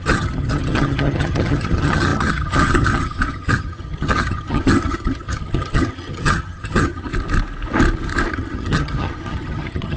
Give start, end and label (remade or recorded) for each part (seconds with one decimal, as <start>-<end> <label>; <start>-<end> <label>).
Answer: 0.0-7.1 remade; 7.1-8.3 recorded; 8.3-10.0 remade